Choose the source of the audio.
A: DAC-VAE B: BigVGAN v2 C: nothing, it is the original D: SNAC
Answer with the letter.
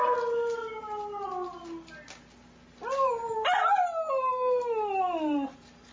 C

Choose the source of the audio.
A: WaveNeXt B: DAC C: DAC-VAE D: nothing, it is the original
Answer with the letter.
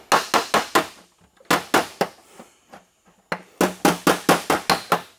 D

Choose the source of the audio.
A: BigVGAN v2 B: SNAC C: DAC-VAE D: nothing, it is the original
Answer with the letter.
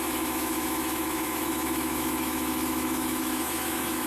C